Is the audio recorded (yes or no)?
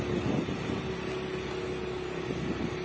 yes